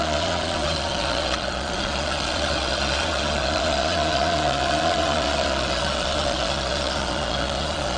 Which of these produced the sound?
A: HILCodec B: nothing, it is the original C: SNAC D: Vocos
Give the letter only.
D